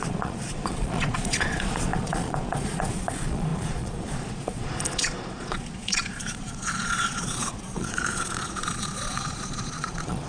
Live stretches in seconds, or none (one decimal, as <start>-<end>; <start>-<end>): none